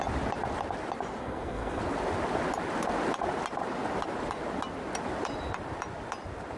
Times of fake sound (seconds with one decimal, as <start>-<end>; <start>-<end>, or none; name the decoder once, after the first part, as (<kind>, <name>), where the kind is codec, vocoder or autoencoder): 1.2-1.8 (codec, SNAC)